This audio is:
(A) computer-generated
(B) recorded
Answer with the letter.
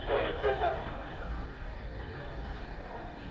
A